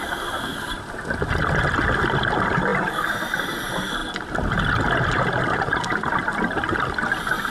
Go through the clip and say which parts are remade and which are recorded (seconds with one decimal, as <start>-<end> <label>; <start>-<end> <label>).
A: 0.0-0.5 recorded; 0.5-1.1 remade; 1.1-7.5 recorded